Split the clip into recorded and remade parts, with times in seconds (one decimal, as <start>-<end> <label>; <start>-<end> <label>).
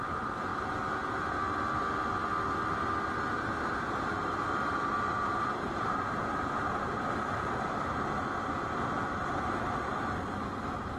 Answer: 0.0-0.5 remade; 0.5-3.3 recorded; 3.3-11.0 remade